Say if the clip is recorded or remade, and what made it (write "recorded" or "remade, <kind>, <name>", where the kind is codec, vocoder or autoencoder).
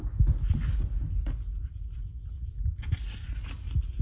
recorded